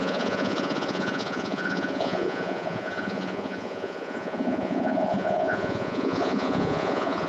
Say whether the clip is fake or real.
fake